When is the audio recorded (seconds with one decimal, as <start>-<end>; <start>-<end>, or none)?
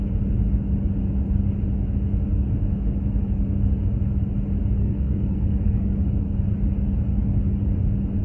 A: 0.0-4.8; 5.9-8.2